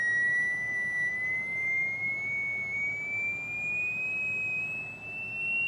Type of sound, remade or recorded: recorded